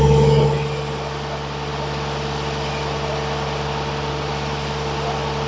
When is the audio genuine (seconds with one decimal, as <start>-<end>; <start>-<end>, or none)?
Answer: 0.0-5.5